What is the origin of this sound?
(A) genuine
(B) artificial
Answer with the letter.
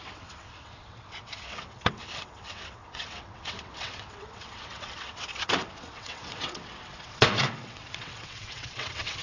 B